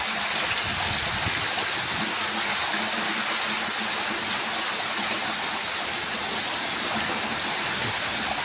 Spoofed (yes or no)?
no